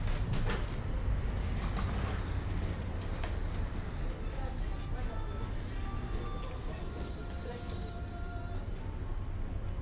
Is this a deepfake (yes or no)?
no